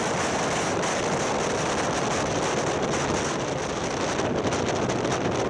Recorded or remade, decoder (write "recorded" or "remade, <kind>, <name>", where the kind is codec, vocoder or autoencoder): recorded